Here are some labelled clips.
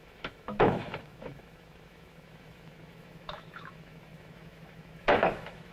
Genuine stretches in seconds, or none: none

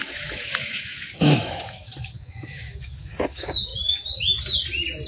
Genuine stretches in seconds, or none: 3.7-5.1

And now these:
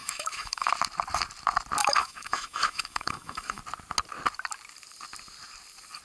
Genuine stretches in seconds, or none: 0.7-1.8; 3.6-6.0